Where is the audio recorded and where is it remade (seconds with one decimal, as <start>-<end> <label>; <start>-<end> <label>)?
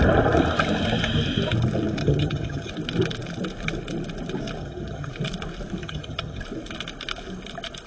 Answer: 0.0-2.0 recorded; 2.0-2.7 remade; 2.7-4.6 recorded; 4.6-5.1 remade; 5.1-5.8 recorded; 5.8-6.4 remade; 6.4-7.9 recorded